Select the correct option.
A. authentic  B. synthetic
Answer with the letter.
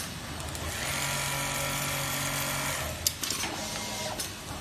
A